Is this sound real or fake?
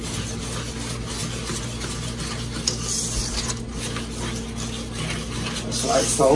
real